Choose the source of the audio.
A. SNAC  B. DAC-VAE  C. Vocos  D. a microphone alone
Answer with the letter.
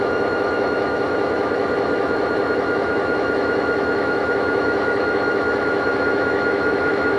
B